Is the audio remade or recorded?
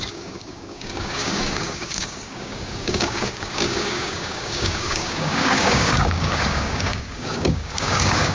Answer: remade